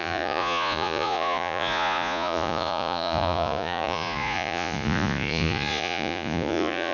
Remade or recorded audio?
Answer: remade